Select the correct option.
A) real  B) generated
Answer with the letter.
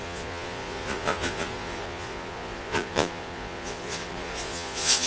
B